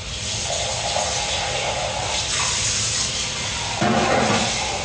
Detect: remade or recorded recorded